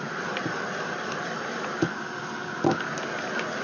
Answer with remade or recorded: recorded